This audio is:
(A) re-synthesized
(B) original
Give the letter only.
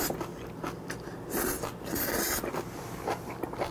B